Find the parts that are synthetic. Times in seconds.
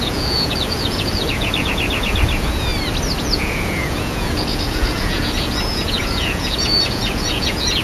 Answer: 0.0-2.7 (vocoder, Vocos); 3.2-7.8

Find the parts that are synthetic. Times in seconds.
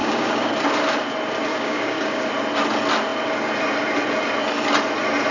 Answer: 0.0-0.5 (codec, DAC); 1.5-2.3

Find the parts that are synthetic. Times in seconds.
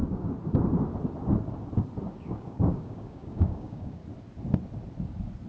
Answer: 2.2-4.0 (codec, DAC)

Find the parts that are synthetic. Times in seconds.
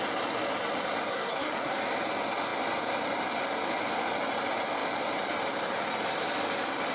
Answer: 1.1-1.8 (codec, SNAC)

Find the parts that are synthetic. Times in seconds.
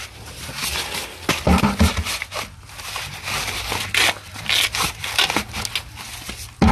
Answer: none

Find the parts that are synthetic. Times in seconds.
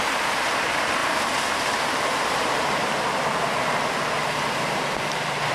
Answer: 0.0-5.5 (vocoder, BigVGAN v2)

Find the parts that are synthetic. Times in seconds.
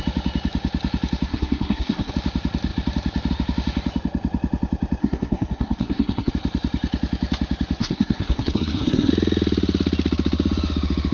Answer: 1.3-2.1 (codec, SNAC); 5.0-6.3; 7.8-9.1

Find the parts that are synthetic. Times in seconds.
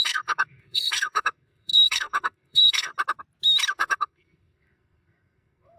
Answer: 0.0-2.9 (codec, SNAC); 3.7-5.8